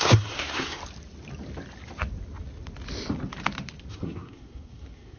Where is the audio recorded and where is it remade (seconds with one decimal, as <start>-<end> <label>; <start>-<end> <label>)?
0.0-0.8 remade; 0.8-3.9 recorded; 3.9-5.2 remade